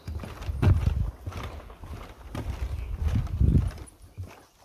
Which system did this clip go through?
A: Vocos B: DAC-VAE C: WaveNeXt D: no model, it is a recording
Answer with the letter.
D